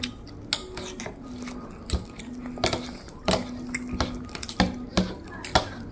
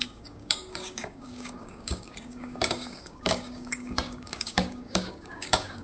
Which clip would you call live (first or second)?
first